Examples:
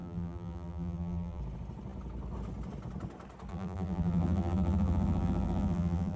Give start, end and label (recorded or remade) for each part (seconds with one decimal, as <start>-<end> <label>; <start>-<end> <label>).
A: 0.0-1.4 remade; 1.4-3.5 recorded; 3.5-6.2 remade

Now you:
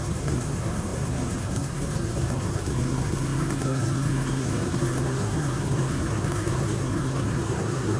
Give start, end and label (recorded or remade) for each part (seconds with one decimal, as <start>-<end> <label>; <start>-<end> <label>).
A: 0.0-8.0 remade

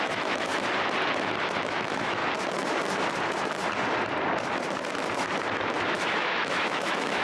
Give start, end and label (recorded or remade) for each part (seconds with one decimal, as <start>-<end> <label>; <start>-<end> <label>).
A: 0.0-0.5 remade; 0.5-1.6 recorded; 1.6-2.2 remade; 2.2-5.9 recorded; 5.9-7.2 remade

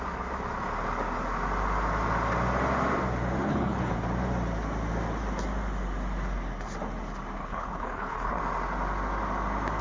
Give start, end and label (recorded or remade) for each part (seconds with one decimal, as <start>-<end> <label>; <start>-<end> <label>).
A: 0.0-3.4 recorded; 3.4-3.9 remade; 3.9-7.4 recorded; 7.4-8.4 remade; 8.4-9.8 recorded

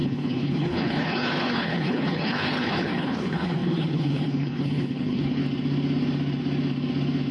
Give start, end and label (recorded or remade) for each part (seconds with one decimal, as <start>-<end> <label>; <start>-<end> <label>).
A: 0.0-5.4 remade; 5.4-7.3 recorded